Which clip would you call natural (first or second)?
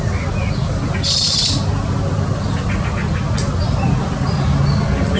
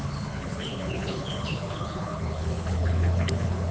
first